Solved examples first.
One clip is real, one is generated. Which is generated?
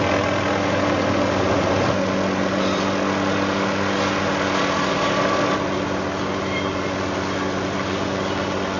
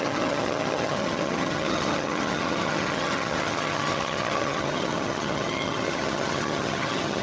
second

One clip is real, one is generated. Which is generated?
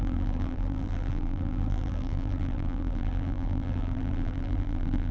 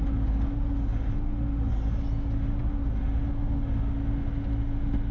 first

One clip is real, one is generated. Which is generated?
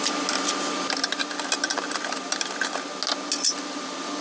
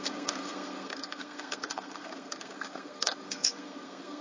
second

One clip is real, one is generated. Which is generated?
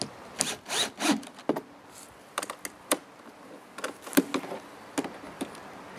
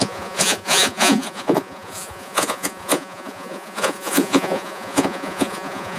second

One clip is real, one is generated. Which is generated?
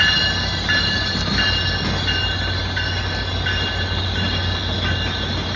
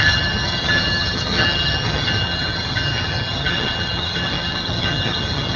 second